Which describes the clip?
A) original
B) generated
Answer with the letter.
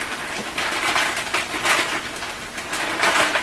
A